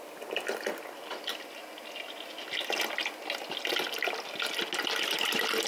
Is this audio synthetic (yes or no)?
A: no